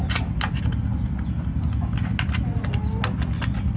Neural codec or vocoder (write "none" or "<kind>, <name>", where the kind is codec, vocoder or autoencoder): none